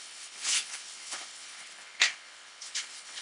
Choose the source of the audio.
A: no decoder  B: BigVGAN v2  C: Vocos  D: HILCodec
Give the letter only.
D